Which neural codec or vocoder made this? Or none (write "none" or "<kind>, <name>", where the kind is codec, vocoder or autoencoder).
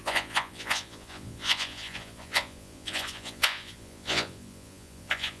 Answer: vocoder, Vocos